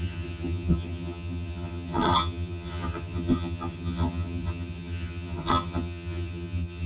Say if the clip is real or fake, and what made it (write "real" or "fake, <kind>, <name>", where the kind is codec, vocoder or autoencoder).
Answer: fake, vocoder, HiFi-GAN